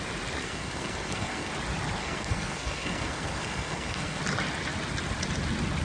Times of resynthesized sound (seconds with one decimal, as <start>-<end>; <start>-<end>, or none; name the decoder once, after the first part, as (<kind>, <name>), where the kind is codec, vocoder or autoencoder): 0.4-1.5 (codec, SNAC); 2.0-4.2